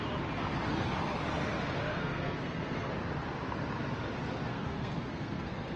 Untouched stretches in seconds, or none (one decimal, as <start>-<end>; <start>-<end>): 0.0-1.9; 2.9-4.5